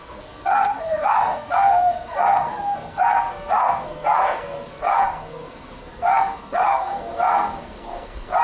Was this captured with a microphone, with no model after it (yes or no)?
no